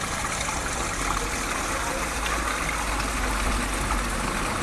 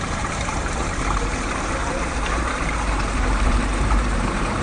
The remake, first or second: second